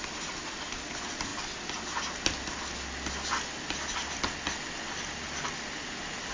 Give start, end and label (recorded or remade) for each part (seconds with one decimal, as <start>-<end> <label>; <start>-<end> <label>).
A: 0.0-6.3 recorded